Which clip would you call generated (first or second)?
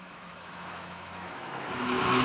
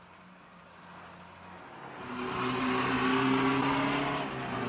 first